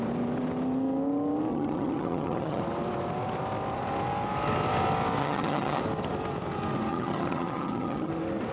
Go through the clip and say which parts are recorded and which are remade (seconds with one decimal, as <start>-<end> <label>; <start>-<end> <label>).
0.0-1.5 recorded; 1.5-2.6 remade; 2.6-5.2 recorded; 5.2-5.8 remade; 5.8-6.9 recorded; 6.9-8.1 remade; 8.1-8.5 recorded